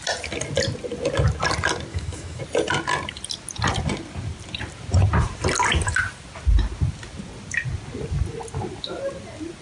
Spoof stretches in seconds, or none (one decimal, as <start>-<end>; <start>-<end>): 1.9-2.4